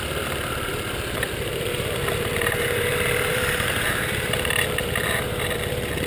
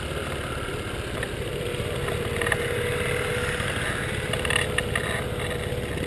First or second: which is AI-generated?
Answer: first